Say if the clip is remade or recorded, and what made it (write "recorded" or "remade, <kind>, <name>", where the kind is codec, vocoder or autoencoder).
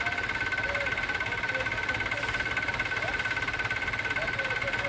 recorded